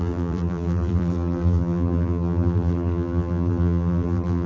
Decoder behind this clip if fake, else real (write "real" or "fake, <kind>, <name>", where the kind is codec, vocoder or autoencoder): fake, vocoder, BigVGAN v2